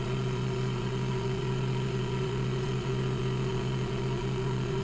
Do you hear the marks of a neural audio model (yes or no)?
yes